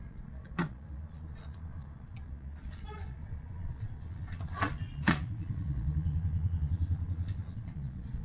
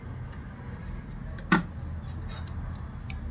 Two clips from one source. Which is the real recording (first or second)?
second